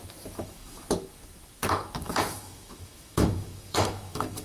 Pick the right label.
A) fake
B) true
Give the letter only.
A